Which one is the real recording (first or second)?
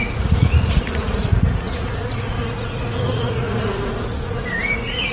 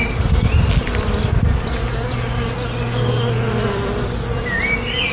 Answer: second